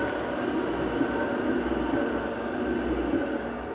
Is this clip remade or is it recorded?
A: recorded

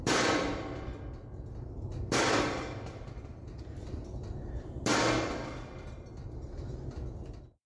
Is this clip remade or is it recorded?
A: recorded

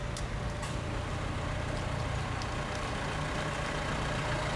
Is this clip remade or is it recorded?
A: recorded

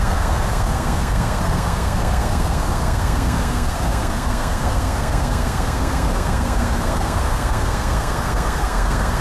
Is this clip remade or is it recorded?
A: remade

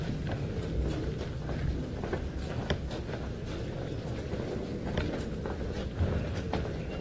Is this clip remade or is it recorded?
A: recorded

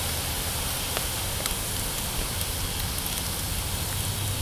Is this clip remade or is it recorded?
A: recorded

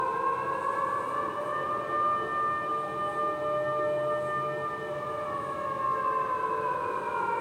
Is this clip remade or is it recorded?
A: recorded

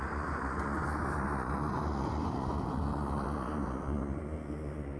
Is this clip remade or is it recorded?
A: remade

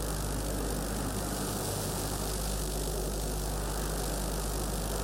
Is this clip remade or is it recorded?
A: recorded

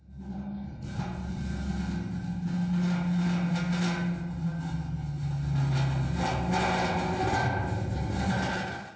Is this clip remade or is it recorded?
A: recorded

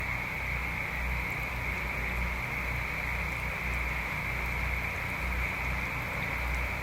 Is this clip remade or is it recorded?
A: recorded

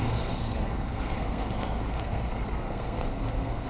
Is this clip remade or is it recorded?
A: remade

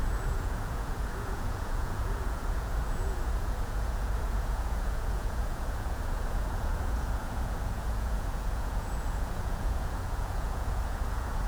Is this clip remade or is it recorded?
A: remade